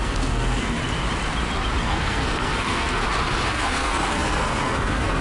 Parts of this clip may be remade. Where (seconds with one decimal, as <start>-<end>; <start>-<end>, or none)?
0.0-0.8; 1.8-3.0; 3.5-5.2